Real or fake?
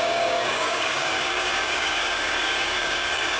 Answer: fake